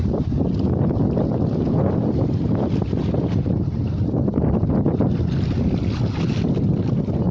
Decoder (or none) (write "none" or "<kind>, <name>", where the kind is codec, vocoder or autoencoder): none